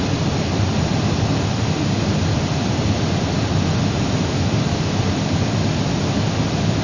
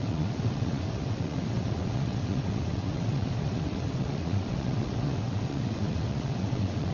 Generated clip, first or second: second